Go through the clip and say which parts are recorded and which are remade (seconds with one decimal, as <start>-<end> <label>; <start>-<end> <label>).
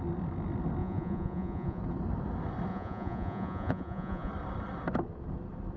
0.0-0.8 recorded; 0.8-1.8 remade; 1.8-2.7 recorded; 2.7-4.3 remade; 4.3-5.8 recorded